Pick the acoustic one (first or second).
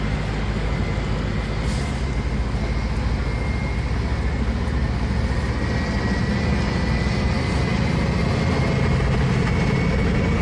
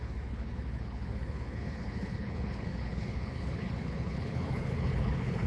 first